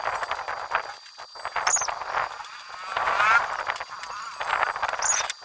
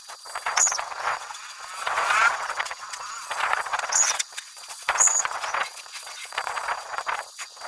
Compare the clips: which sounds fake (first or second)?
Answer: second